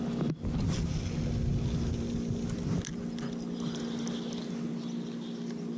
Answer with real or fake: real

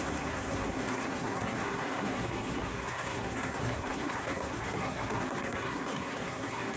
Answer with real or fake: fake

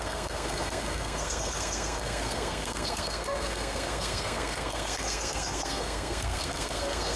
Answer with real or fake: fake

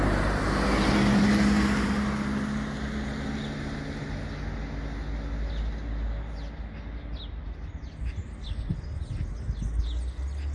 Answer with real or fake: real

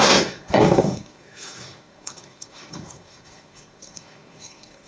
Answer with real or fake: fake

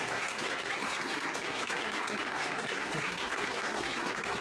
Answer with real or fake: fake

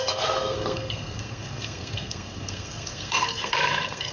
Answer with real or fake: fake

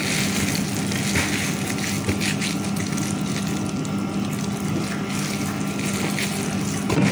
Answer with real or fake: real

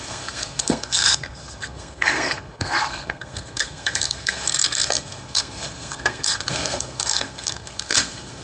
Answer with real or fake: fake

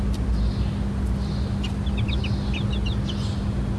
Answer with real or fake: real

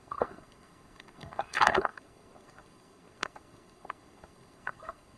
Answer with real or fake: fake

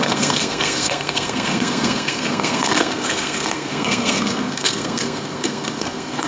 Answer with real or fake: fake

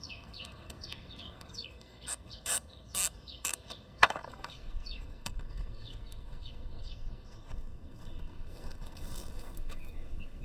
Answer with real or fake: fake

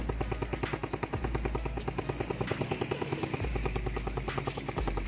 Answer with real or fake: real